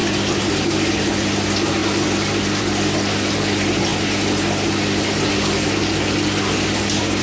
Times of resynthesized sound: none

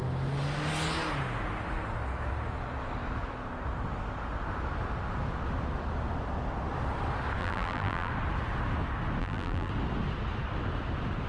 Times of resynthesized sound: 7.4-8.1; 9.2-9.7